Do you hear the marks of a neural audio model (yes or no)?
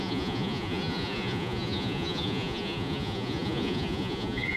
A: yes